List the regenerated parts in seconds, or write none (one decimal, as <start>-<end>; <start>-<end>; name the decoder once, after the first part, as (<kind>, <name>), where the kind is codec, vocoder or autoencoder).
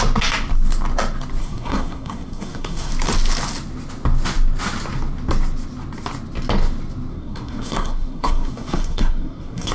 1.4-2.9 (codec, SNAC); 7.1-9.7